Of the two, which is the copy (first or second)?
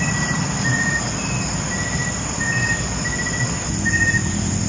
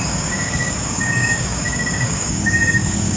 second